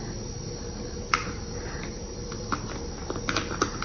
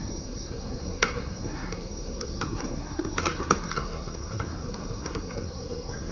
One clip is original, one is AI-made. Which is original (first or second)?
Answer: first